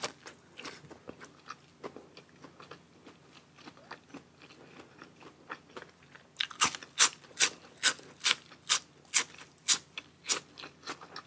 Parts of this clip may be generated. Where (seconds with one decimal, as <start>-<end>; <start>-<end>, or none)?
9.6-10.2